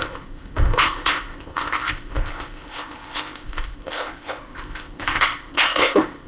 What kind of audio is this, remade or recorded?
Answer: remade